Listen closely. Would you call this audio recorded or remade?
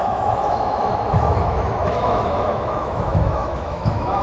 remade